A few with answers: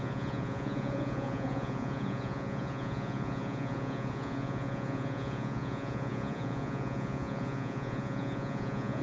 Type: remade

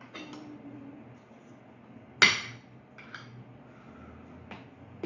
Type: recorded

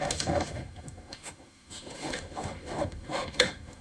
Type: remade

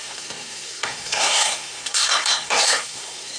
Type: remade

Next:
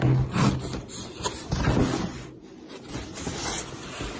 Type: recorded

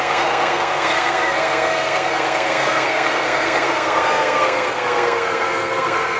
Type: remade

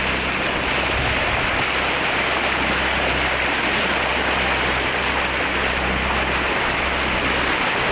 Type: recorded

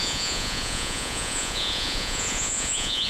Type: remade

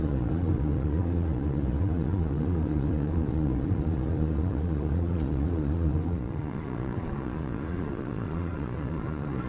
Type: remade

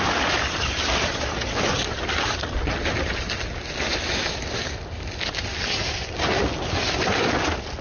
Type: recorded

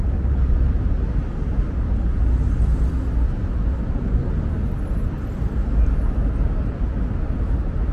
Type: recorded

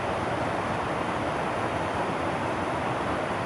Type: recorded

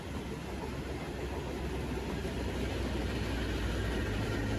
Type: recorded